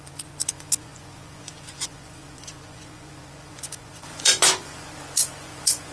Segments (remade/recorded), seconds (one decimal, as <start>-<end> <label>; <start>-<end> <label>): 0.0-5.9 remade

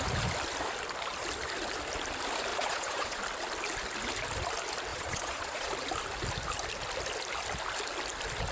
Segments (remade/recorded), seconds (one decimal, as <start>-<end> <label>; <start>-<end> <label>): 0.0-2.5 recorded; 2.5-3.2 remade; 3.2-4.9 recorded; 4.9-5.7 remade; 5.7-8.5 recorded